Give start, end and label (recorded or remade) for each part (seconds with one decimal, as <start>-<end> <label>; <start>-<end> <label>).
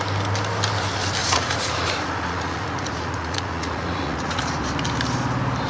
0.0-1.2 recorded; 1.2-4.6 remade; 4.6-5.7 recorded